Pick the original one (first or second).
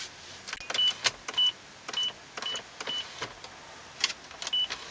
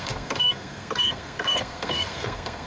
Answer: first